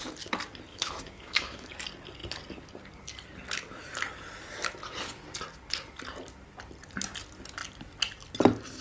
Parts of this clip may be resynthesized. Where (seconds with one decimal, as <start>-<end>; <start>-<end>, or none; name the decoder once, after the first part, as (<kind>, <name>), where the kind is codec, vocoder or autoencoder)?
0.7-1.7 (autoencoder, DAC-VAE)